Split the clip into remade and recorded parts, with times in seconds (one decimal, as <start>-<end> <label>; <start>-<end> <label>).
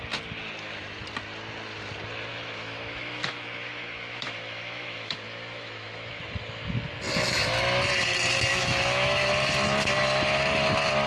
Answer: 0.0-2.3 recorded; 2.3-6.2 remade; 6.2-8.5 recorded; 8.5-9.3 remade; 9.3-11.1 recorded